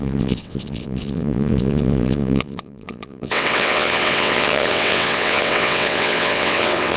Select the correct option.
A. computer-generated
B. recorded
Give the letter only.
A